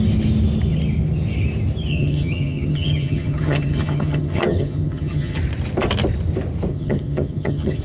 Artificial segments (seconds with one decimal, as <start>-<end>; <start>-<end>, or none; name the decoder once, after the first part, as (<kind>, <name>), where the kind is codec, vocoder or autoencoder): 1.9-5.4 (vocoder, HiFi-GAN); 6.7-7.8